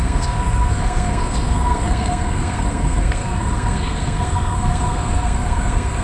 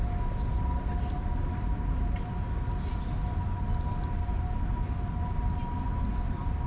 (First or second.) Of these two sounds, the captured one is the second